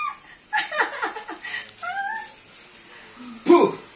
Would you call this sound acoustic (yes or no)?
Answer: yes